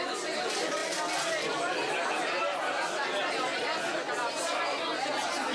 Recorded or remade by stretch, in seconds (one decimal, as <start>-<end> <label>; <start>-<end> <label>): 0.0-5.5 recorded